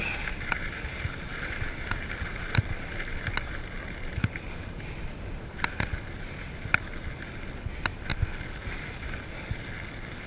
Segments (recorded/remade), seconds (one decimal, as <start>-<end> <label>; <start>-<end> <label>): 0.0-10.3 recorded